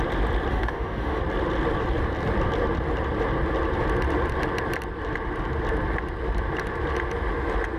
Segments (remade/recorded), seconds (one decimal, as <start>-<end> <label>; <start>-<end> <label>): 0.0-0.5 recorded; 0.5-1.2 remade; 1.2-7.8 recorded